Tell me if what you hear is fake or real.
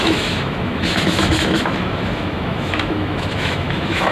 fake